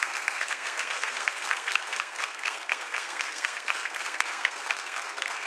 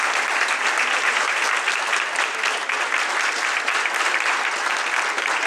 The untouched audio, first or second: second